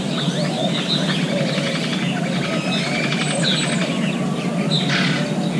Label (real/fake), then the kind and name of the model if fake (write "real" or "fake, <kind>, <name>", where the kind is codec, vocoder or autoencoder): real